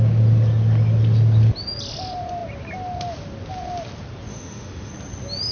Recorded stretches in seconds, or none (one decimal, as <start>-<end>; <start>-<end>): 0.0-4.3; 4.9-5.5